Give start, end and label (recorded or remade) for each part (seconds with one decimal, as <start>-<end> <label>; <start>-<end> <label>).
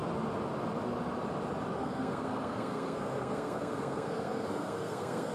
0.0-1.8 recorded; 1.8-5.3 remade